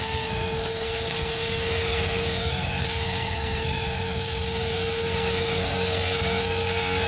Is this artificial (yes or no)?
yes